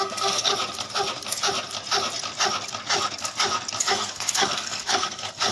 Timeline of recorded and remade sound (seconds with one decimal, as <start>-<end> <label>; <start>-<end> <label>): 0.0-0.5 remade; 0.5-3.8 recorded; 3.8-5.5 remade